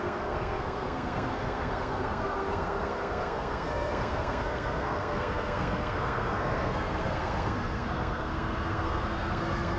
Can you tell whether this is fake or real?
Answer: fake